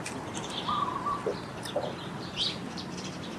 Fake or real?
fake